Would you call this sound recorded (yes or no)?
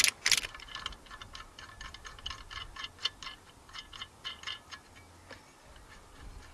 yes